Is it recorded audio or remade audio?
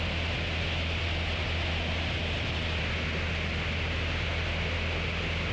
recorded